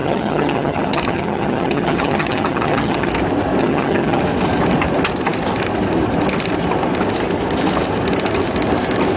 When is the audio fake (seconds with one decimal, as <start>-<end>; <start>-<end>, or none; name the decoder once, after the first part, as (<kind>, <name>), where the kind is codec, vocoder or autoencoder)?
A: 0.0-3.1 (vocoder, HiFi-GAN); 3.6-4.2

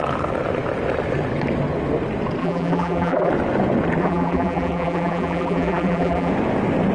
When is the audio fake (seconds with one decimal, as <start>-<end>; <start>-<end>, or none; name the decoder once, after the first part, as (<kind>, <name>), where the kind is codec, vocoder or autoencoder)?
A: 2.4-3.3 (vocoder, BigVGAN v2); 4.0-6.3